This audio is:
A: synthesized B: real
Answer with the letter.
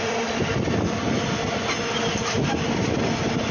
B